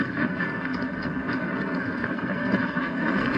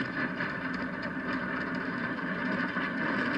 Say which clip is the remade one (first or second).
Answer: first